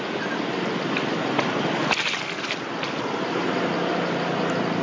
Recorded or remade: recorded